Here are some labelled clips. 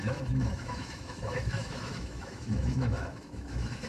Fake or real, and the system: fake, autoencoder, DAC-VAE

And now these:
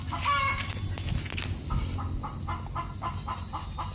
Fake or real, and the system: real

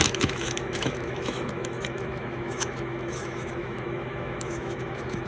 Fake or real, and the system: fake, autoencoder, DAC-VAE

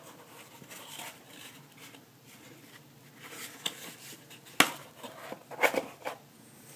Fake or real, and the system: real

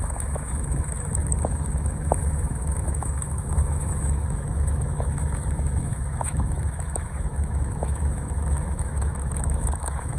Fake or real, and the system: fake, autoencoder, DAC-VAE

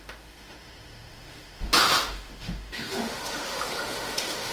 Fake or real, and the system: fake, autoencoder, DAC-VAE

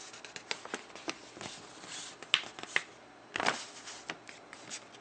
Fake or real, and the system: real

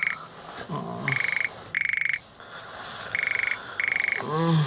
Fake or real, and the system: real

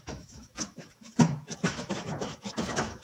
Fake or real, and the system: fake, autoencoder, DAC-VAE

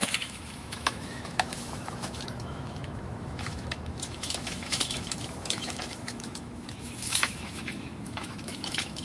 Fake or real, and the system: fake, autoencoder, DAC-VAE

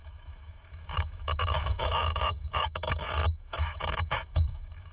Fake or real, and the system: fake, autoencoder, DAC-VAE